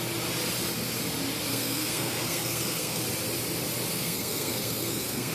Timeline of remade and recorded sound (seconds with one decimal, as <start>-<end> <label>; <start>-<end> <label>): 0.0-1.5 recorded; 1.5-3.0 remade; 3.0-3.9 recorded; 3.9-5.3 remade